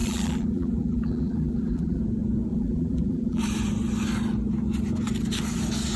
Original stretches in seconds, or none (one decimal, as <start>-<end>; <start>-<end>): 2.0-2.5; 3.4-6.0